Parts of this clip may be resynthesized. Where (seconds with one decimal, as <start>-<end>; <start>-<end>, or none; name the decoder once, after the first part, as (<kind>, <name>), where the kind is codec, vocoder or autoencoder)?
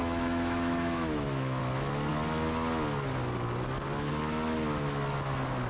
0.0-1.6 (autoencoder, DAC-VAE)